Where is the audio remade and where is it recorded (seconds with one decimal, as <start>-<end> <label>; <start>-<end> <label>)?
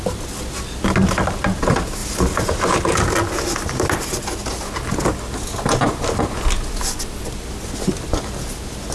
0.0-8.9 recorded